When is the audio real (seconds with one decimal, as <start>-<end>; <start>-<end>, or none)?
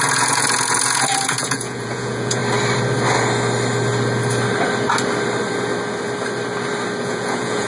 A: 2.4-7.0